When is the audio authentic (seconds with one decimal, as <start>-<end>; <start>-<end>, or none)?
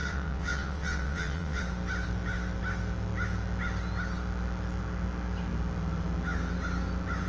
1.6-7.3